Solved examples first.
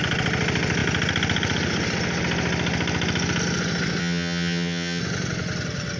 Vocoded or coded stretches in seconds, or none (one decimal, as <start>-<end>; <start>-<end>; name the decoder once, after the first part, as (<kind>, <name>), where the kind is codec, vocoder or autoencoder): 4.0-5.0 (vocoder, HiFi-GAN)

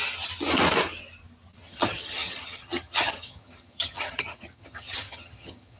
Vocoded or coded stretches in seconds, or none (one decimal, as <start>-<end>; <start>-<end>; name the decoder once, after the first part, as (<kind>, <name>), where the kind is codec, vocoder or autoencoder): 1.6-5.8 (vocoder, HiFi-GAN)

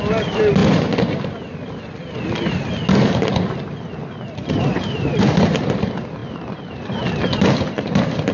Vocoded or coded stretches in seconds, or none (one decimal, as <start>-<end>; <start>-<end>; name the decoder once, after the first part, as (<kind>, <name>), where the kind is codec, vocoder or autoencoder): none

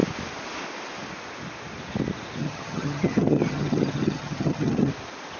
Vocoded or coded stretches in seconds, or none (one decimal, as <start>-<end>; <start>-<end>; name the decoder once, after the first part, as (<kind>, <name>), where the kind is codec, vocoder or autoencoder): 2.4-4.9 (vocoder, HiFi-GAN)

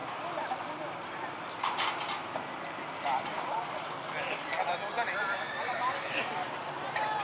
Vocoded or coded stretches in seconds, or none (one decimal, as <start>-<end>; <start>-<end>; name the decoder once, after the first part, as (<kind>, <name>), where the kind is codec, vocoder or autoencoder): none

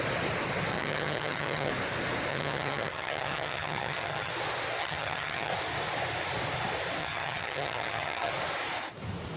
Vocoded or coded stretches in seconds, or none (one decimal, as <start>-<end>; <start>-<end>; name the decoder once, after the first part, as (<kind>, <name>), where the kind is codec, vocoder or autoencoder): 0.7-1.7 (vocoder, HiFi-GAN); 2.3-4.3; 4.8-5.5; 7.0-8.3

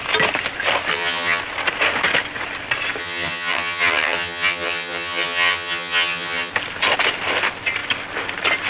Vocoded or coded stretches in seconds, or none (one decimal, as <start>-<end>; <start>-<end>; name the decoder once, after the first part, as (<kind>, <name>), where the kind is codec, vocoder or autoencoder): 0.9-1.4 (vocoder, HiFi-GAN); 3.0-6.5